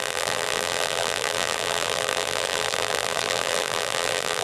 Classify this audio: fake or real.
fake